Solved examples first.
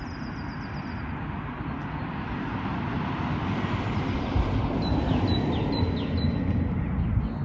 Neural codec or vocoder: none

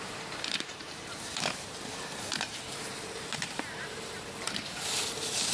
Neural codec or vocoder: vocoder, BigVGAN v2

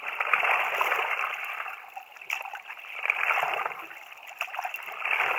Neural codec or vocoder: vocoder, BigVGAN v2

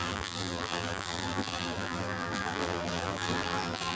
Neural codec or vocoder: vocoder, BigVGAN v2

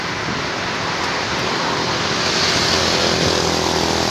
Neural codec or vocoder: none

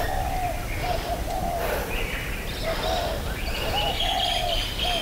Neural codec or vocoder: vocoder, BigVGAN v2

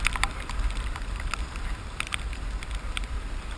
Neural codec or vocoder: vocoder, BigVGAN v2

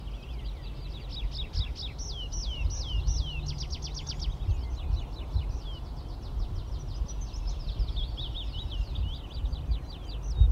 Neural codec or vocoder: none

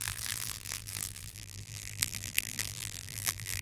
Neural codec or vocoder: vocoder, BigVGAN v2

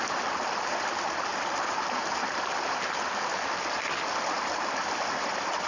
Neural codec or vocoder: none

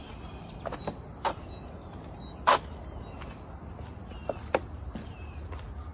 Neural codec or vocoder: none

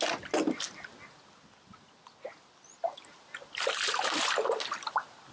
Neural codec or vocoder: none